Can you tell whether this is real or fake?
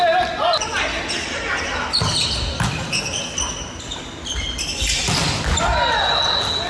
real